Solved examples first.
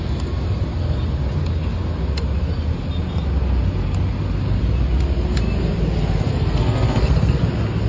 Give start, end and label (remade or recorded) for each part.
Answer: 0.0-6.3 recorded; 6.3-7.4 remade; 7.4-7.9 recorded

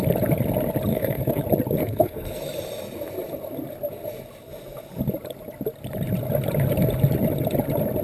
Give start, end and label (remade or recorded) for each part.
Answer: 0.0-0.9 recorded; 0.9-1.4 remade; 1.4-1.8 recorded; 1.8-2.4 remade; 2.4-8.0 recorded

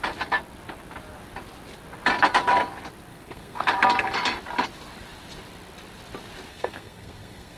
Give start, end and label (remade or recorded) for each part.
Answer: 0.0-3.1 recorded; 3.1-3.7 remade; 3.7-6.5 recorded; 6.5-7.6 remade

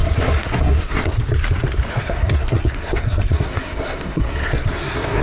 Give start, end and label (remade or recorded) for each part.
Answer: 0.0-1.2 remade; 1.2-1.9 recorded; 1.9-5.2 remade

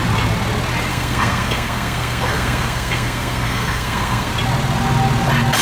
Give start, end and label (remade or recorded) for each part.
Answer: 0.0-0.9 recorded; 0.9-4.3 remade; 4.3-5.6 recorded

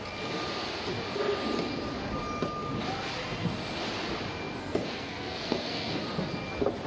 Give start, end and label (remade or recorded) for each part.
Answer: 0.0-4.6 recorded; 4.6-6.0 remade; 6.0-6.9 recorded